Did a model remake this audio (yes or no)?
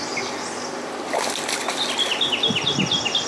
no